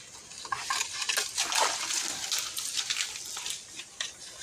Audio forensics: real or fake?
real